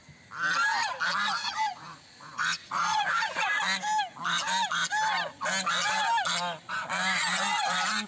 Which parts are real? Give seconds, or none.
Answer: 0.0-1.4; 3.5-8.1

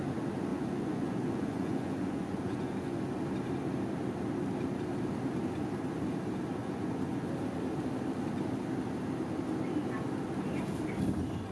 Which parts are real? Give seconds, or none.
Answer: 0.0-0.5; 3.0-6.6; 7.3-11.5

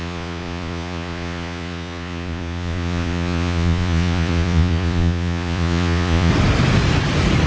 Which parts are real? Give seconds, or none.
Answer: 6.3-7.5

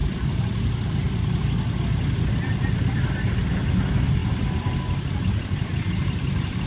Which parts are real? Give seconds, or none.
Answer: 0.0-6.7